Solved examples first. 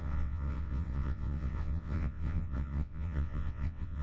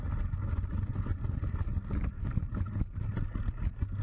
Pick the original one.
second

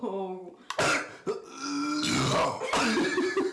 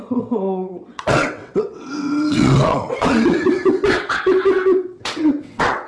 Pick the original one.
first